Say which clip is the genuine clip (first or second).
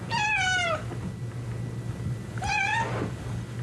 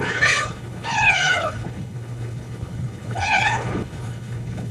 first